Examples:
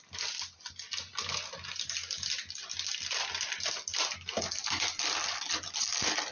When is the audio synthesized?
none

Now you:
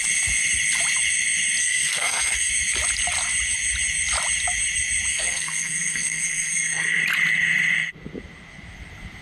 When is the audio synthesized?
1.6-2.5 (codec, SNAC); 5.1-7.0

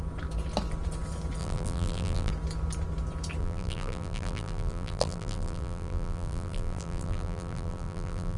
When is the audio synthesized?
1.4-2.3 (vocoder, BigVGAN v2); 3.4-8.4

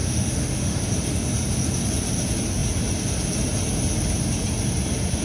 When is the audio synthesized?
0.0-0.8 (autoencoder, DAC-VAE)

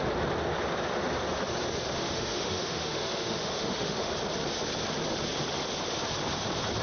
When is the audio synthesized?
2.0-4.1 (autoencoder, DAC-VAE)

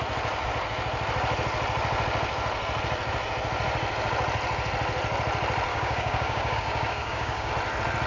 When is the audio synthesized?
5.7-7.5 (codec, DAC)